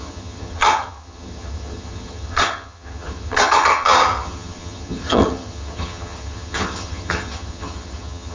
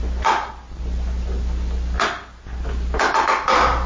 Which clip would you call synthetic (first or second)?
first